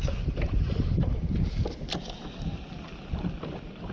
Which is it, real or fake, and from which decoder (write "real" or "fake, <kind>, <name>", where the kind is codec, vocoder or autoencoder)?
real